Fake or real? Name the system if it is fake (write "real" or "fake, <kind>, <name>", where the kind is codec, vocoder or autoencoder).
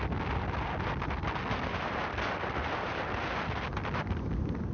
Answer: real